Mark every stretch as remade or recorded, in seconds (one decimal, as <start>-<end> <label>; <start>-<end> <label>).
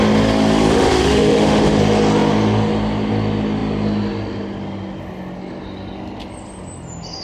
0.0-0.7 recorded; 0.7-1.8 remade; 1.8-7.2 recorded